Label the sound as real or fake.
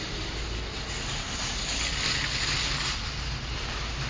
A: real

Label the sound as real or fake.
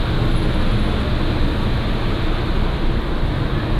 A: real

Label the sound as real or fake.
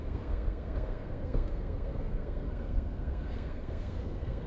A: fake